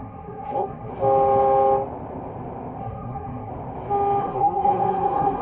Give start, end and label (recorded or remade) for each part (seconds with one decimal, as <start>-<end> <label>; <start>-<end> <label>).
0.0-0.9 remade; 0.9-2.8 recorded; 2.8-3.5 remade; 3.5-4.2 recorded; 4.2-5.4 remade